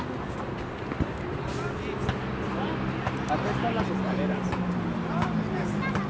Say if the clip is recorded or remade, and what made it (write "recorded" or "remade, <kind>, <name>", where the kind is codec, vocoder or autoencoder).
recorded